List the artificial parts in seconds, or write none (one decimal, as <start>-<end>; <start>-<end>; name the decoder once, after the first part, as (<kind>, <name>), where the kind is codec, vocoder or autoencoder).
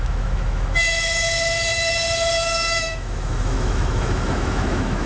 0.0-5.1 (autoencoder, DAC-VAE)